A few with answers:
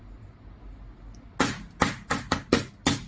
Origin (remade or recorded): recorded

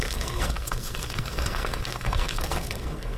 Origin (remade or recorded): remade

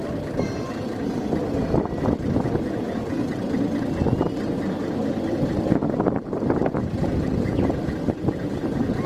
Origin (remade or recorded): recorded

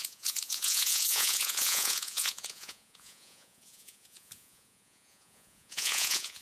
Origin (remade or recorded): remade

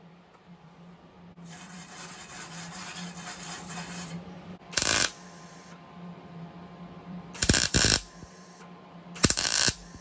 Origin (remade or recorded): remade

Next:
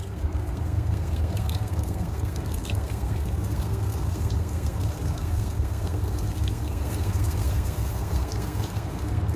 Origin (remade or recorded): remade